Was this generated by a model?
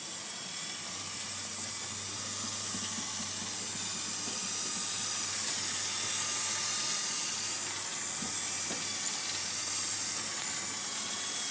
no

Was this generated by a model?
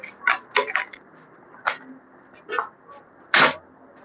no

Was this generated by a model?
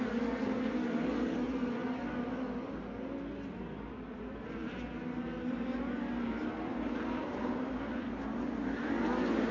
no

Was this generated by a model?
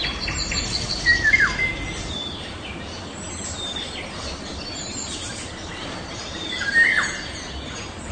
no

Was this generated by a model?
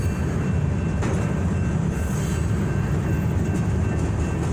no